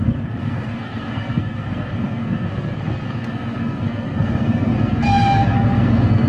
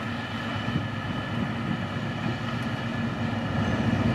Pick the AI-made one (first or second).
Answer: first